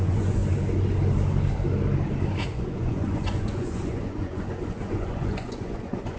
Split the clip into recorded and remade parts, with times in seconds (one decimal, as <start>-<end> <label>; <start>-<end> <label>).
0.0-0.4 remade; 0.4-2.4 recorded; 2.4-6.2 remade